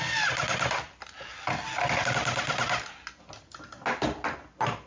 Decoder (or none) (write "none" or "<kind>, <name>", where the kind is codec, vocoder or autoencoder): none